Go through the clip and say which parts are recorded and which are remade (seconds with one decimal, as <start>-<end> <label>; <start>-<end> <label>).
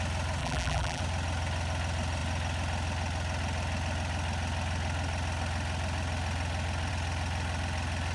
0.0-0.4 recorded; 0.4-1.0 remade; 1.0-8.1 recorded